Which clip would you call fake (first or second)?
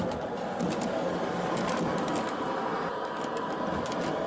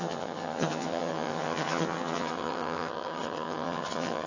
second